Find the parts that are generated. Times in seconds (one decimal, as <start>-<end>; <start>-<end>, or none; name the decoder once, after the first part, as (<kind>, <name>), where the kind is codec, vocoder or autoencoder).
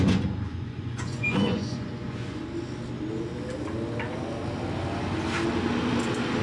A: 0.0-2.4 (vocoder, Vocos)